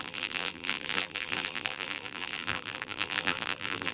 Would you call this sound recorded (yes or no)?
no